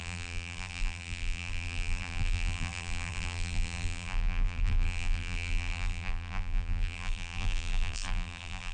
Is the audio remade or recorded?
remade